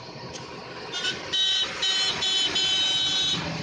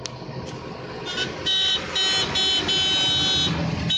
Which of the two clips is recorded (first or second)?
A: second